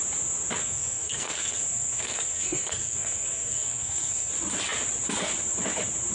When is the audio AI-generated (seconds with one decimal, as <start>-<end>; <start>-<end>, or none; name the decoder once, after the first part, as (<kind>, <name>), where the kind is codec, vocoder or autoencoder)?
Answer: 0.6-4.3 (codec, SNAC)